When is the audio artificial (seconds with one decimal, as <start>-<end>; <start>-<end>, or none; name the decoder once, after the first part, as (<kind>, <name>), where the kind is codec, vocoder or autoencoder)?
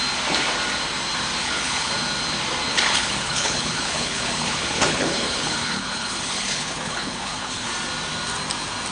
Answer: 1.4-1.9 (codec, HILCodec); 2.7-7.7